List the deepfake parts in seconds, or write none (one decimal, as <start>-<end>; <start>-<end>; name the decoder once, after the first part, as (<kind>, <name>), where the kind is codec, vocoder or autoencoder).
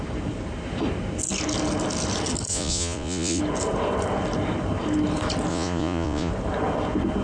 2.5-3.4 (vocoder, Vocos); 5.5-6.3